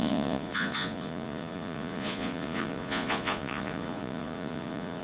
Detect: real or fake fake